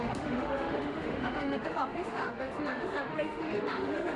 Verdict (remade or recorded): remade